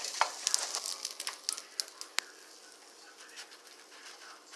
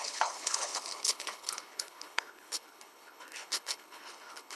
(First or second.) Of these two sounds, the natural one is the first